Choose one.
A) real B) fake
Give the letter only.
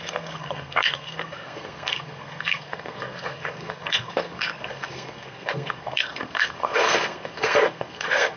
B